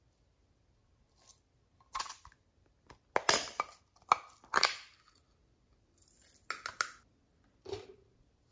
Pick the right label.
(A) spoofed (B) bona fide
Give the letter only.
B